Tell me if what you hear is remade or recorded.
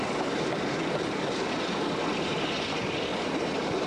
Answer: remade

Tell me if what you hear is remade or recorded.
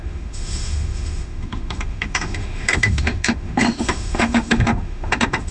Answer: remade